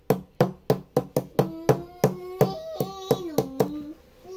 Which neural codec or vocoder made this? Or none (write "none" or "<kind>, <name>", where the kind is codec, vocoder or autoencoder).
none